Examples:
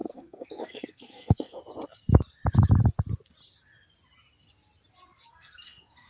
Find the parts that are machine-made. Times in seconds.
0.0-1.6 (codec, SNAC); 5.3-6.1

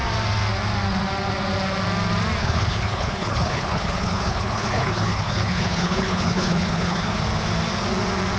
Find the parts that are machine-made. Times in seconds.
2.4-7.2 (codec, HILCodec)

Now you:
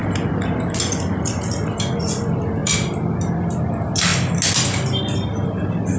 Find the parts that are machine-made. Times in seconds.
none